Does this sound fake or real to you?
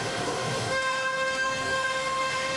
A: fake